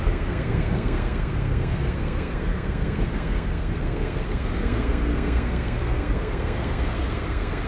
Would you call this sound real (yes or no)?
no